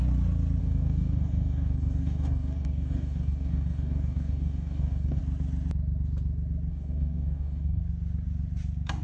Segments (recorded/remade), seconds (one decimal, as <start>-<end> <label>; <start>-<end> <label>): 0.0-0.6 recorded; 0.6-5.2 remade; 5.2-6.7 recorded; 6.7-7.8 remade; 7.8-9.0 recorded